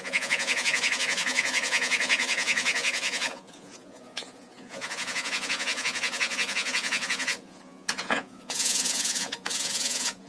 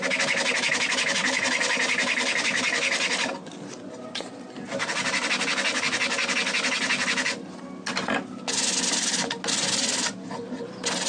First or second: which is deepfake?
first